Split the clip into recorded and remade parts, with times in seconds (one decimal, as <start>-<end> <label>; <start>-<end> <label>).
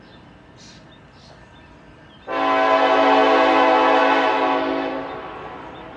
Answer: 0.0-6.0 recorded